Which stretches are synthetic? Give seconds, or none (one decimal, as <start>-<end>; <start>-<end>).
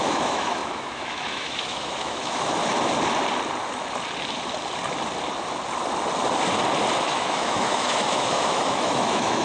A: 0.0-2.6; 7.0-9.4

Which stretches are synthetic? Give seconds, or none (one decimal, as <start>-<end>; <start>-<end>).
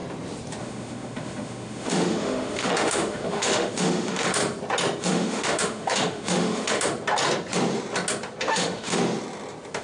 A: 0.6-4.4; 5.0-6.9; 8.4-9.0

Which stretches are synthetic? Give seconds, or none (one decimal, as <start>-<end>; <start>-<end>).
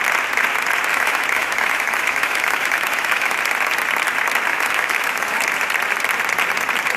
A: 0.9-3.4; 4.5-5.4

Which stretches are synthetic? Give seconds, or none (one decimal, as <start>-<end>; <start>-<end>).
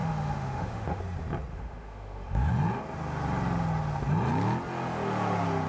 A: 0.0-1.0; 1.5-2.5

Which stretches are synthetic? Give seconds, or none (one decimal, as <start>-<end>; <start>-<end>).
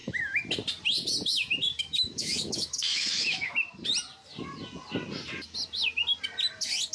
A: 0.0-0.5; 1.6-3.6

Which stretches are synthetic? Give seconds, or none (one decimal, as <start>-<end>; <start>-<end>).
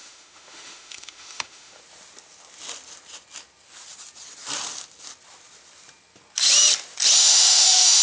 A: 0.0-1.8; 7.2-8.0